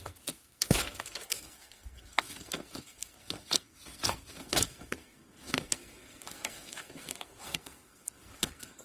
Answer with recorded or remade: remade